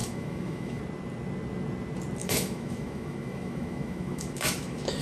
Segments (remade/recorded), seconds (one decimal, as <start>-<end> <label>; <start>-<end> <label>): 0.0-0.8 remade; 0.8-2.2 recorded; 2.2-5.0 remade